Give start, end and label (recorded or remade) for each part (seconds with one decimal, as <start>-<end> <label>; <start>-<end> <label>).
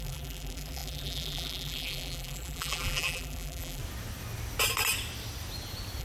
0.0-3.8 remade; 3.8-6.0 recorded